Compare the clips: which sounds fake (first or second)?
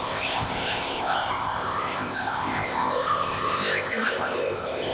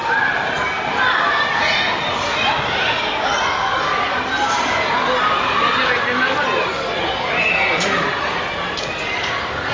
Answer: first